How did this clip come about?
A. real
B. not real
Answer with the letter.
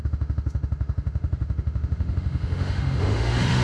B